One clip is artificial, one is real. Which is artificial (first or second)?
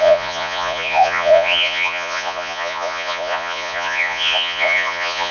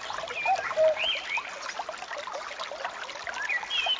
first